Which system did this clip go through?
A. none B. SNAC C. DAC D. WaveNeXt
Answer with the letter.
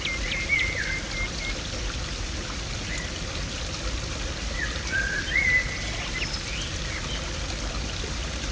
A